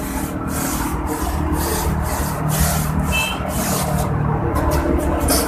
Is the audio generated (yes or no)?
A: no